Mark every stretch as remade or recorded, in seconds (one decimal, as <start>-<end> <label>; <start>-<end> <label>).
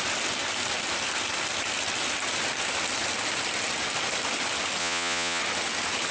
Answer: 0.0-4.8 recorded; 4.8-5.4 remade; 5.4-6.1 recorded